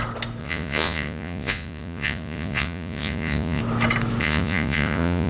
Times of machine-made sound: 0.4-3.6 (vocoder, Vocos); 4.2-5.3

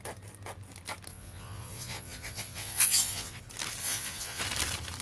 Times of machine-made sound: 1.1-3.4 (vocoder, Vocos); 3.8-4.4

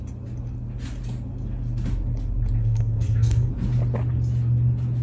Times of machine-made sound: 2.6-3.5 (codec, SNAC)

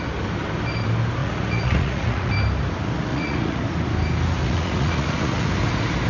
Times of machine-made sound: 1.2-2.3 (vocoder, Vocos); 3.1-3.6; 4.4-5.5

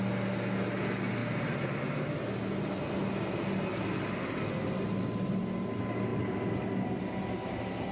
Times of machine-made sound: none

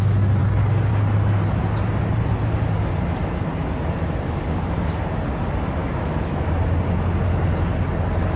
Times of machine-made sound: 5.8-6.5 (autoencoder, DAC-VAE)

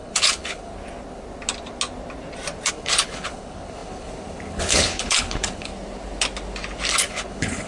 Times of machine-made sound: 0.0-0.7 (codec, HILCodec); 2.7-5.7; 6.9-7.7